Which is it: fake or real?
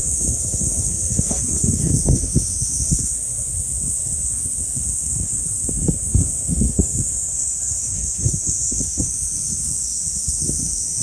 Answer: fake